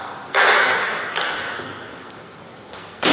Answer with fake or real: fake